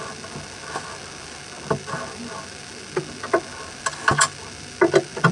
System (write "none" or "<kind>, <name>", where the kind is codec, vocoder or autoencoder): none